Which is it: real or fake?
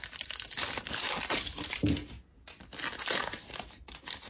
real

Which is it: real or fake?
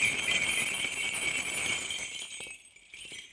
real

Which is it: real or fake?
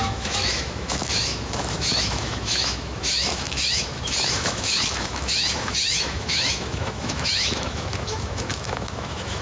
fake